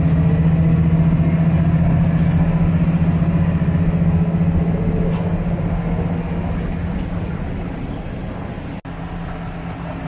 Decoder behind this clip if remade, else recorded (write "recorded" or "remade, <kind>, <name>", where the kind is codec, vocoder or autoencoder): recorded